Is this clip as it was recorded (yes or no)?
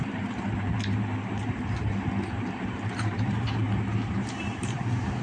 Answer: no